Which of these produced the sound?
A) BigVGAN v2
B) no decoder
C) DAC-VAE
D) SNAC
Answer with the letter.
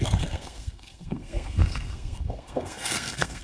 D